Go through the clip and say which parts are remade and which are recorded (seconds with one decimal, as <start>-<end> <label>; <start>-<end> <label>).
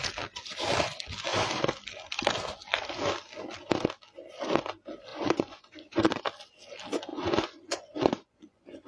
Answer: 0.0-5.1 recorded; 5.1-6.2 remade; 6.2-7.1 recorded; 7.1-8.9 remade